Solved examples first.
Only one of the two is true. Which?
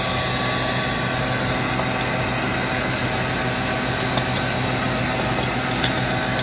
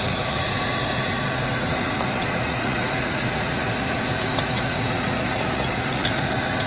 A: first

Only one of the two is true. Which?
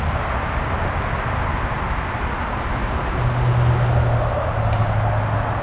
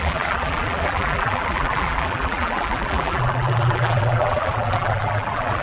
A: first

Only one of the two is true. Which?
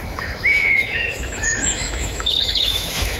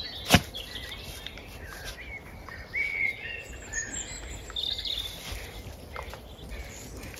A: second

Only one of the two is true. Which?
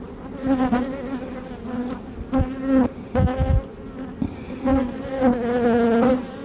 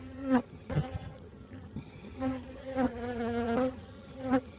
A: first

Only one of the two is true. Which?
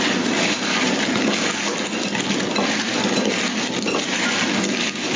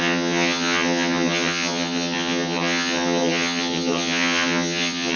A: first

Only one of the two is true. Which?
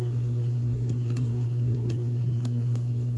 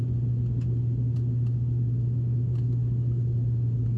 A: second